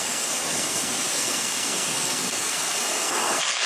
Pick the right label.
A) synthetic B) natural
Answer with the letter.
A